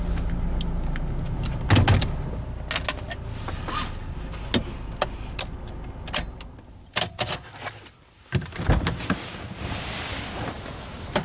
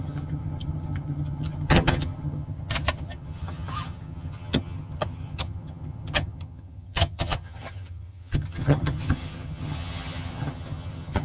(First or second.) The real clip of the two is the first